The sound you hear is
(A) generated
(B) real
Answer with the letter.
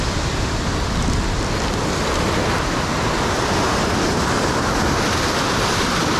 B